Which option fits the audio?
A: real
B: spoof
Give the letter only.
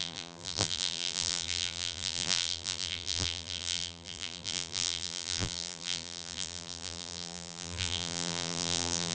B